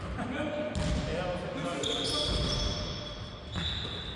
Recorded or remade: recorded